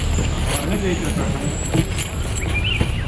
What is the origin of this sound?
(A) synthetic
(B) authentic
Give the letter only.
B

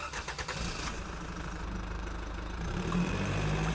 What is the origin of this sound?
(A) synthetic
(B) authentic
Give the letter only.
A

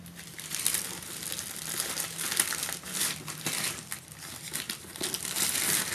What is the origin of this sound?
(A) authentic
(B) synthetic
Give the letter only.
A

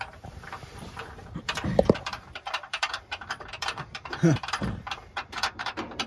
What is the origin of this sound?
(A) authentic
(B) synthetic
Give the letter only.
B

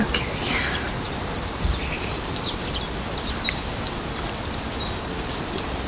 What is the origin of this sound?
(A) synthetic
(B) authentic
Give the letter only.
B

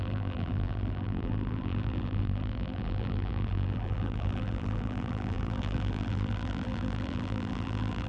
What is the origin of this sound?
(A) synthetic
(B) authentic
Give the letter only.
A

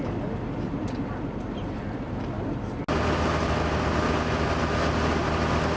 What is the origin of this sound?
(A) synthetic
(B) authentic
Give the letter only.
B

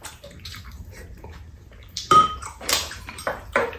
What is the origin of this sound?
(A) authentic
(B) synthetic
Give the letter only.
B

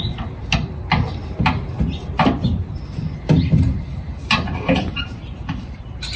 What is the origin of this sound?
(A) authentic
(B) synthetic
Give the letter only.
B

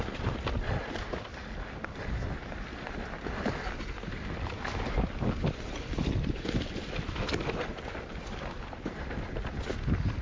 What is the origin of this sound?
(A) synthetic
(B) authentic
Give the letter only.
A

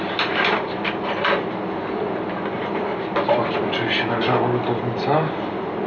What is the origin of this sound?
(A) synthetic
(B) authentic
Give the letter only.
B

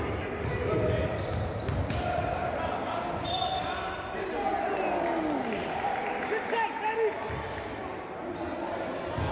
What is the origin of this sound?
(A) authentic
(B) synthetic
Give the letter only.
A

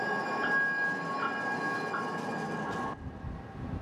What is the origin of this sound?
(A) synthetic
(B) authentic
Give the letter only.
B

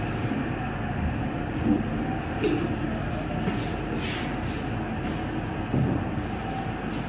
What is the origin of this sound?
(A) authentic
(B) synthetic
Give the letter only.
A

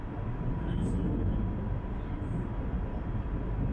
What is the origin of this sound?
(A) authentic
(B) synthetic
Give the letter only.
A